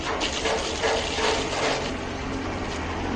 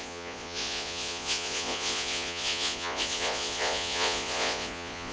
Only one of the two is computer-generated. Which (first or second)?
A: second